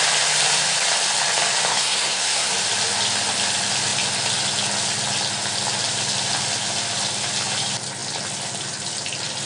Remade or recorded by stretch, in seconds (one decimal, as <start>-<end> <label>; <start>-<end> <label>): 0.0-1.7 recorded; 1.7-2.5 remade; 2.5-9.5 recorded